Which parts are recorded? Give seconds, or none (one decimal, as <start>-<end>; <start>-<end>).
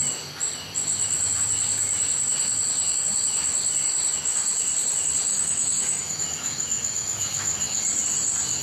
0.0-5.3; 7.8-8.6